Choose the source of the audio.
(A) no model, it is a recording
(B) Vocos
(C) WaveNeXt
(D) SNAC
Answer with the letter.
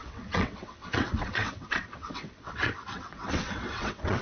C